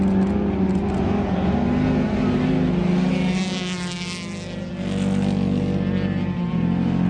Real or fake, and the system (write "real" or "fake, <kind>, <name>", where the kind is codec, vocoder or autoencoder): real